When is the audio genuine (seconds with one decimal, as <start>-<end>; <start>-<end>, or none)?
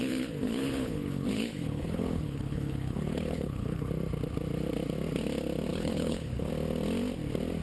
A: 3.9-5.7; 6.5-7.6